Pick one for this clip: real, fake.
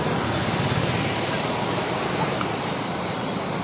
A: real